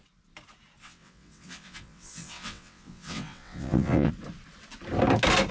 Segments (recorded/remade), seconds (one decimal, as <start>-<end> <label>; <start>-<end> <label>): 0.0-0.8 recorded; 0.8-4.1 remade; 4.1-5.5 recorded